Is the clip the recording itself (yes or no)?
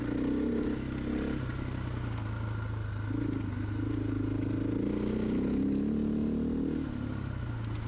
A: yes